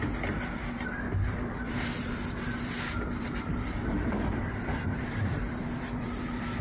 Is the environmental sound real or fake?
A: fake